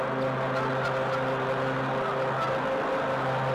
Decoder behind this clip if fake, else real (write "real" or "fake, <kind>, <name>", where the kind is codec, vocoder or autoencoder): real